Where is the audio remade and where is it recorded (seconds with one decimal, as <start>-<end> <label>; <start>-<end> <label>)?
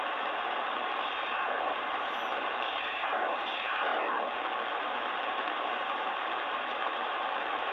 0.0-3.9 remade; 3.9-4.7 recorded; 4.7-7.7 remade